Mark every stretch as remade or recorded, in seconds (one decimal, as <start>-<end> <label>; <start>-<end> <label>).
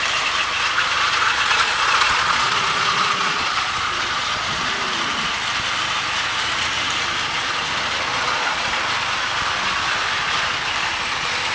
0.0-0.4 recorded; 0.4-4.7 remade; 4.7-8.1 recorded; 8.1-8.6 remade; 8.6-11.5 recorded